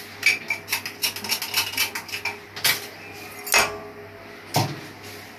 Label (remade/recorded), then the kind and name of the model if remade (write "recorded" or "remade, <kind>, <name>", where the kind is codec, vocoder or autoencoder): recorded